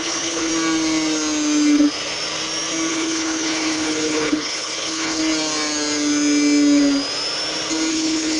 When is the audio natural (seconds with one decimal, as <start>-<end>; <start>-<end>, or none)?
0.5-2.9; 5.2-7.9